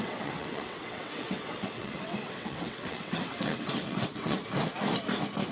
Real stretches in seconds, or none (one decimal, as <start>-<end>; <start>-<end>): 4.4-5.5